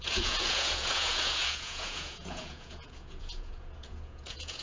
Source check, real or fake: fake